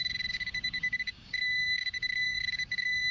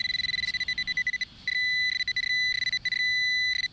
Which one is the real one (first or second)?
second